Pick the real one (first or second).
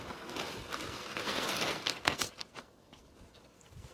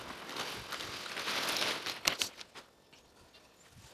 second